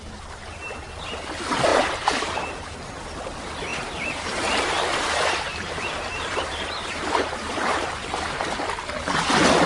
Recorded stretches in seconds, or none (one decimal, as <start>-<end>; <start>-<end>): 0.0-1.7; 2.4-3.7; 8.0-9.7